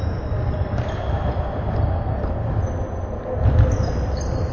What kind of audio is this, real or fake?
real